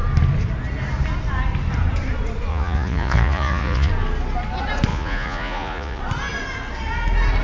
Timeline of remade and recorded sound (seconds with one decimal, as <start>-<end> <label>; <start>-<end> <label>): 0.0-2.5 recorded; 2.5-3.9 remade; 3.9-4.9 recorded; 4.9-6.0 remade; 6.0-7.4 recorded